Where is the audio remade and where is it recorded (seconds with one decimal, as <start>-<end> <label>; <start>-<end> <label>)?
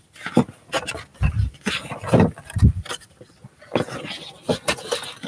0.0-5.3 recorded